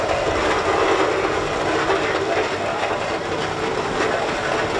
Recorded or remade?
recorded